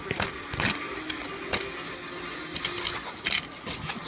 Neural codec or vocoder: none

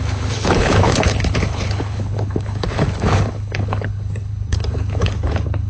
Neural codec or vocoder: codec, HILCodec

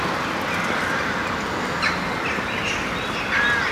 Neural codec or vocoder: none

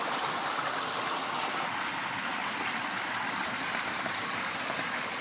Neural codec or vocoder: none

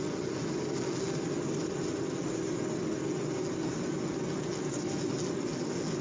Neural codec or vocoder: none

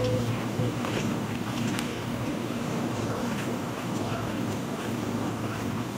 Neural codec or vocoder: codec, DAC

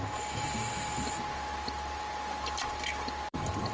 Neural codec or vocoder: none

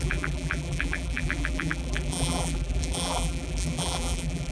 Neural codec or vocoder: vocoder, BigVGAN v2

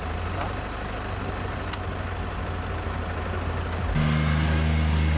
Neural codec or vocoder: none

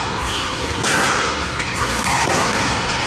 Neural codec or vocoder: codec, SNAC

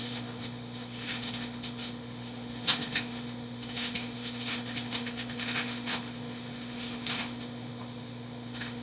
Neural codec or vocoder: autoencoder, DAC-VAE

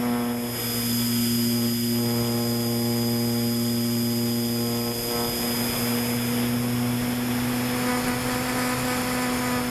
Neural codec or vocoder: none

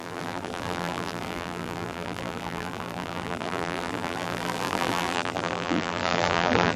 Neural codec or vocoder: vocoder, BigVGAN v2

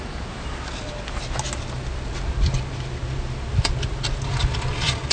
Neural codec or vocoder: none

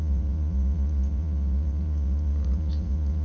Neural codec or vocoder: vocoder, Vocos